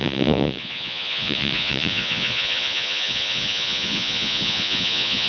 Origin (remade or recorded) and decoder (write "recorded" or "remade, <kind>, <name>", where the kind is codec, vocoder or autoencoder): remade, vocoder, Vocos